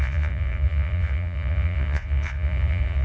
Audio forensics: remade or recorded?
remade